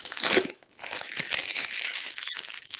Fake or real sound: fake